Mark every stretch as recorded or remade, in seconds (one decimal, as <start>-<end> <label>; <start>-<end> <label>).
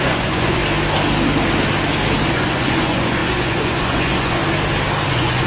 0.0-0.6 remade; 0.6-2.3 recorded; 2.3-4.4 remade; 4.4-5.1 recorded; 5.1-5.5 remade